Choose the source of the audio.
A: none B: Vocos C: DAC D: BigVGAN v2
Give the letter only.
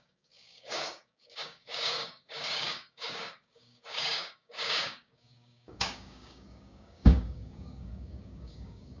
C